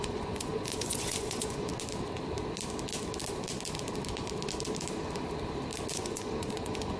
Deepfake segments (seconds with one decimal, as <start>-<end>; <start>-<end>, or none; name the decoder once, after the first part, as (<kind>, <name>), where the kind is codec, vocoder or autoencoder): 0.0-1.7 (vocoder, Vocos); 5.9-7.0